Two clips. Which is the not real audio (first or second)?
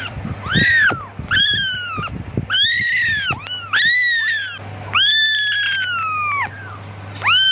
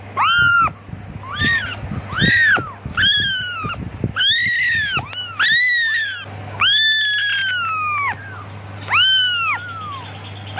first